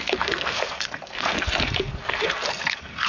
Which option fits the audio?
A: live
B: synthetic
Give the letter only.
B